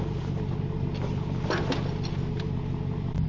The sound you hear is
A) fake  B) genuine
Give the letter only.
B